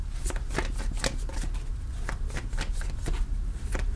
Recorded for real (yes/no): yes